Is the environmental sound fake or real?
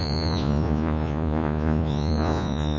fake